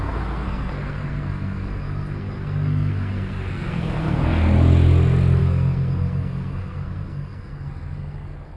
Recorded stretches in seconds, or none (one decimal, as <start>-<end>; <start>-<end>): 4.3-5.4